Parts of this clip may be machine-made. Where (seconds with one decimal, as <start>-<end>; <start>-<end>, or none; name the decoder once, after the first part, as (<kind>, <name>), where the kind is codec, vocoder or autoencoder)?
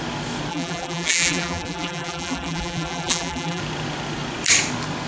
0.5-3.6 (vocoder, BigVGAN v2)